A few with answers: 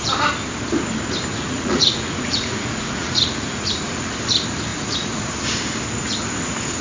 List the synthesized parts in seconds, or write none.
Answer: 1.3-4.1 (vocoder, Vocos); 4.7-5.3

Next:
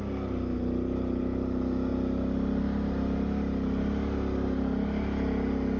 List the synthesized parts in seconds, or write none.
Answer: none

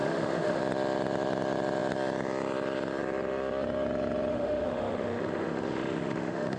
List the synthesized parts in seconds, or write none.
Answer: 0.0-0.6 (autoencoder, DAC-VAE); 4.3-6.6

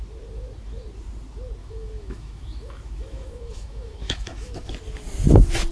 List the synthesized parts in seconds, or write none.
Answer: 1.6-4.7 (autoencoder, DAC-VAE)

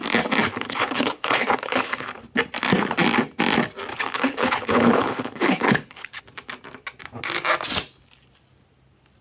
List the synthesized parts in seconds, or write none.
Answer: 0.5-2.2 (codec, HILCodec); 3.9-6.2

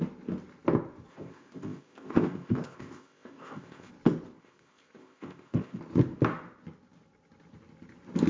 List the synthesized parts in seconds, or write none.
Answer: 1.1-3.9 (codec, ZipCodec); 4.4-5.8

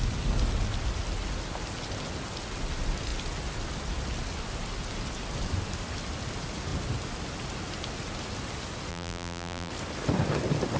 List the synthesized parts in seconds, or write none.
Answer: 8.9-9.7 (vocoder, BigVGAN v2)

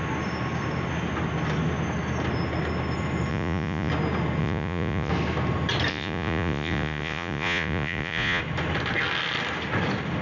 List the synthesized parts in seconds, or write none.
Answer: 3.3-3.9 (vocoder, Vocos); 4.4-5.1; 5.9-8.4